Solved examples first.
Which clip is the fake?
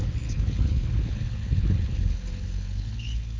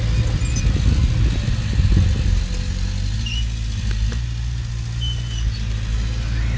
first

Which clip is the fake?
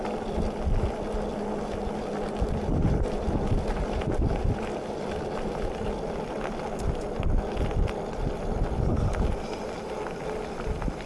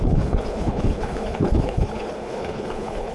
second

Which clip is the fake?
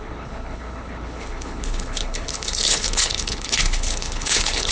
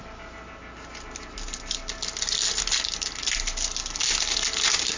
first